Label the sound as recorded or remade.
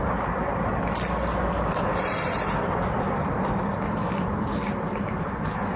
recorded